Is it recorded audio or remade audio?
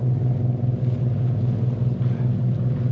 recorded